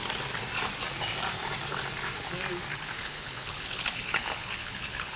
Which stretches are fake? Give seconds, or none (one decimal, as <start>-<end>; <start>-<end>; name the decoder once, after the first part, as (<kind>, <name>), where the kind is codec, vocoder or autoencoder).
2.7-5.2 (codec, HILCodec)